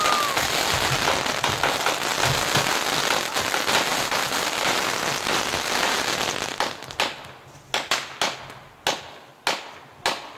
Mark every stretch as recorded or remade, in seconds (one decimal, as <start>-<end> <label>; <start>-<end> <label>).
0.0-3.9 recorded; 3.9-5.4 remade; 5.4-10.4 recorded